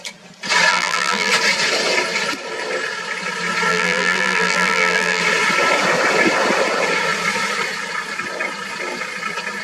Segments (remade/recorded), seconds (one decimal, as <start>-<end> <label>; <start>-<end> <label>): 0.0-0.7 recorded; 0.7-1.3 remade; 1.3-3.7 recorded; 3.7-5.2 remade; 5.2-9.6 recorded